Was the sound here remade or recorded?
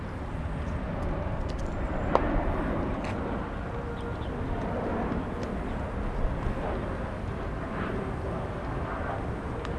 recorded